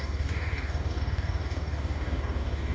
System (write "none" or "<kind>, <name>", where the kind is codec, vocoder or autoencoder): codec, DAC